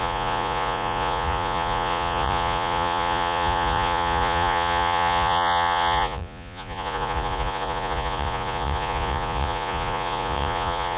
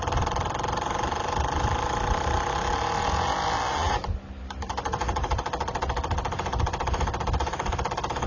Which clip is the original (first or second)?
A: second